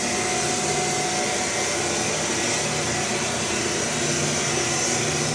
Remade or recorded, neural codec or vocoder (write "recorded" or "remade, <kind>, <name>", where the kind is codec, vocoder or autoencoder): recorded